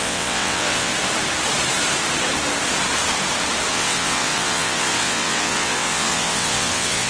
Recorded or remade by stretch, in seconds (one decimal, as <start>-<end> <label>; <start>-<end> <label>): 0.0-0.9 remade; 0.9-3.7 recorded; 3.7-7.1 remade